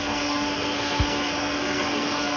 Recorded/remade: remade